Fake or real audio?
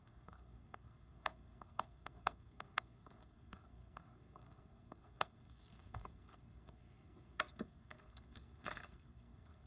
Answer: fake